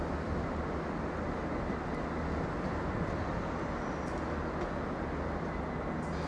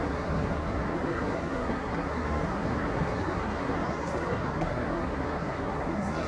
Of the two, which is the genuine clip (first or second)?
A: first